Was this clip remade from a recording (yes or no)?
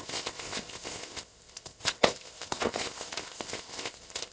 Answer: yes